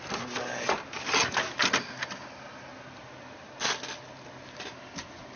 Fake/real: real